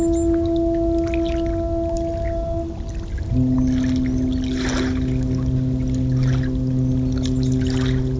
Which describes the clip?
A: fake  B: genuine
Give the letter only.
B